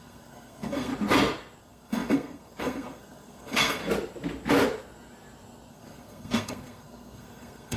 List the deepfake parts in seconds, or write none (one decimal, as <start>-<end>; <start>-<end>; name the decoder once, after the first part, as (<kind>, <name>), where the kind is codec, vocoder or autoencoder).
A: 0.0-0.9 (codec, SNAC); 1.6-3.8; 5.7-7.8